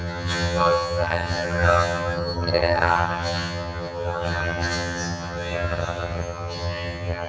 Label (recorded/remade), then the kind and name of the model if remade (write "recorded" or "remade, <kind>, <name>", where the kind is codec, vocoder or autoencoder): remade, vocoder, HiFi-GAN